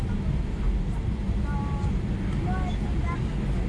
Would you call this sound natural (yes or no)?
yes